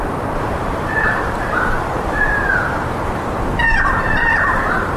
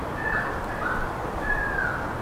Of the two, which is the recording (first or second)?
second